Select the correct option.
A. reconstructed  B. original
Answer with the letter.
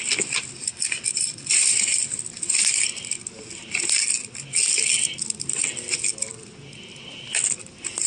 B